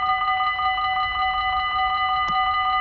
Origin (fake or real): real